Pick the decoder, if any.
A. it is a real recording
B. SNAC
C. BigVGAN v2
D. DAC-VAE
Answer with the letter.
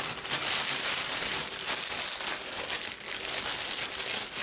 A